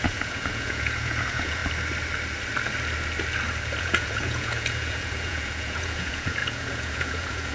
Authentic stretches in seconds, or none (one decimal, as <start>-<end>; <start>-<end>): 1.6-3.8